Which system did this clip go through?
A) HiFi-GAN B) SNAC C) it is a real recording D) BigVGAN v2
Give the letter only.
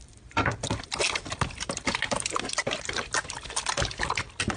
C